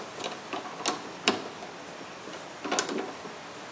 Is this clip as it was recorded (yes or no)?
yes